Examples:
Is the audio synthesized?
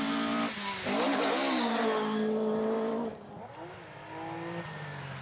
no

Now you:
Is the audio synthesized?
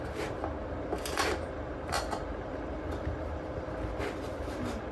no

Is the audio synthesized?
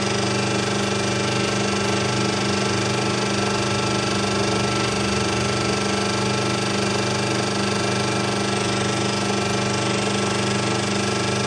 no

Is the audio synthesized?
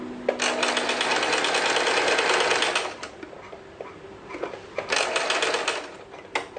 no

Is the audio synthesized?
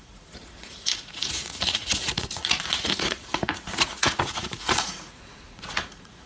yes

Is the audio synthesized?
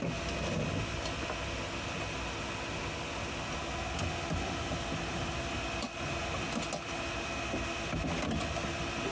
no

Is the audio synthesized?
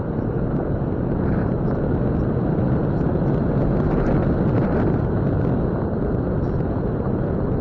no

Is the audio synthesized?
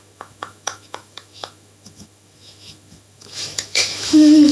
yes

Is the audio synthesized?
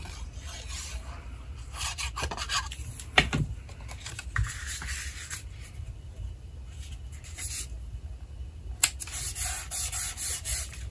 no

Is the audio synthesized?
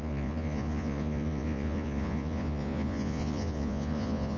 yes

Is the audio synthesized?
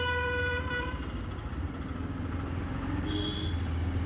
no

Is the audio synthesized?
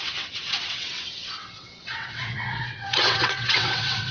yes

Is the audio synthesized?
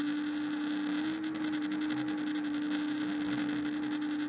no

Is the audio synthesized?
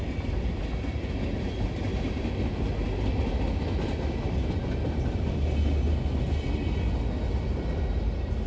no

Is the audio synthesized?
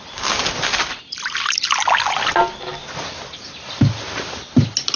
no